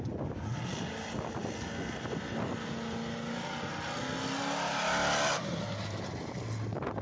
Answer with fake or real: real